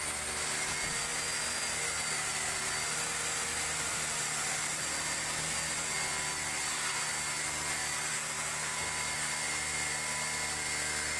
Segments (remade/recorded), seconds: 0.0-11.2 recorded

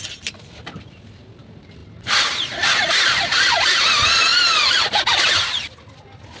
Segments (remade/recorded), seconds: 0.0-6.4 recorded

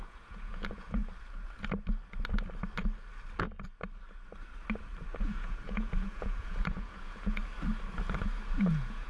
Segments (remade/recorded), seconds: 0.0-1.0 remade; 1.0-5.2 recorded; 5.2-7.4 remade; 7.4-8.6 recorded; 8.6-9.1 remade

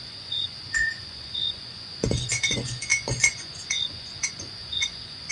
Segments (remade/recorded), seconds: 0.0-5.3 remade

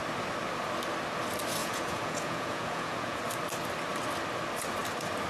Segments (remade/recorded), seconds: 0.0-1.6 recorded; 1.6-3.2 remade; 3.2-5.3 recorded

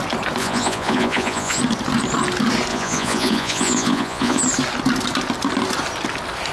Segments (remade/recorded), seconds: 0.0-0.4 recorded; 0.4-1.6 remade; 1.6-2.7 recorded; 2.7-4.4 remade; 4.4-6.5 recorded